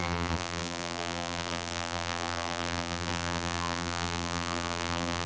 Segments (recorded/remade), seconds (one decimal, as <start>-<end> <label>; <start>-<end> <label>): 0.0-5.3 remade